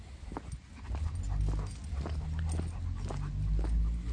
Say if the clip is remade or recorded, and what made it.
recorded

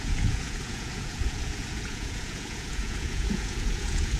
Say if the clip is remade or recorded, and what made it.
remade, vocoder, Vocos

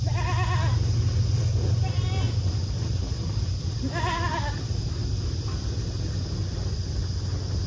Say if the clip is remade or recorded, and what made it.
recorded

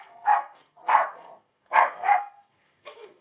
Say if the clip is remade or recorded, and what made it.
remade, codec, SNAC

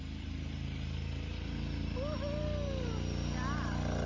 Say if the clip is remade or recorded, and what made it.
recorded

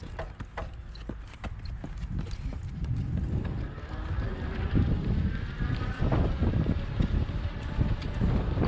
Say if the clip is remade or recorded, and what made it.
recorded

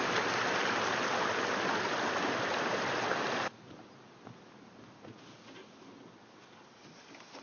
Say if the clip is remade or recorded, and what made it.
recorded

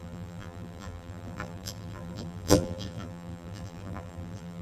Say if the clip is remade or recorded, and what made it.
remade, vocoder, BigVGAN v2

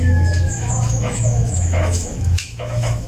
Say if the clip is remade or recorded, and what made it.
remade, autoencoder, DAC-VAE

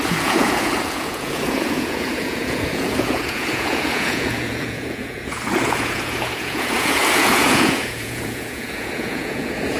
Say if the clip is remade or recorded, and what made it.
remade, vocoder, Vocos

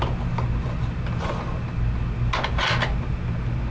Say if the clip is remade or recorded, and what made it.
recorded